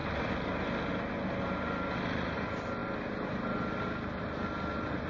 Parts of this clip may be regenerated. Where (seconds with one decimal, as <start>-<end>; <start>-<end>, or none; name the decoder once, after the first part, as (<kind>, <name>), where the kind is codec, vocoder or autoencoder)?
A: none